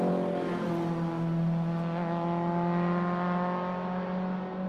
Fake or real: real